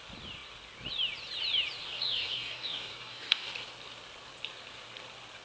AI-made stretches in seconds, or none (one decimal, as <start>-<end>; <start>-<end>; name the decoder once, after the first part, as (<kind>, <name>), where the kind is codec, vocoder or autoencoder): 1.8-3.5 (codec, DAC)